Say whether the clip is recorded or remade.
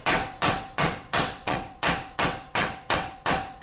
remade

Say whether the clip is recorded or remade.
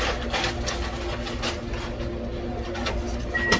recorded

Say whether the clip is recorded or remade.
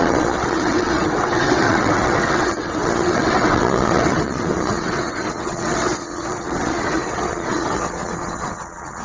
remade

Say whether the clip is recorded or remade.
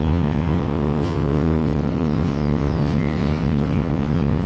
remade